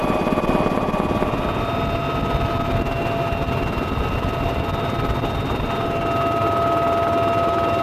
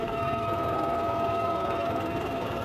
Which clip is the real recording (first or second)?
first